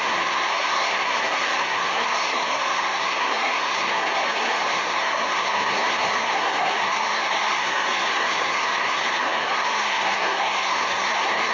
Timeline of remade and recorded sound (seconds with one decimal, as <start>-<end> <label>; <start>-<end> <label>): 0.0-11.5 remade